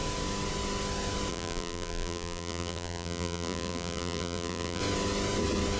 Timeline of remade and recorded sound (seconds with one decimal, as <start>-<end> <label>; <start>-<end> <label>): 0.0-1.3 recorded; 1.3-4.8 remade; 4.8-5.8 recorded